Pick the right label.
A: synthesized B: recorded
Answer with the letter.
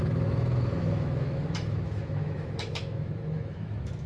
A